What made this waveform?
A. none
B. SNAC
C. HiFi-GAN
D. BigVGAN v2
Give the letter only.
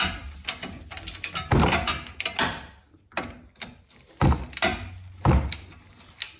A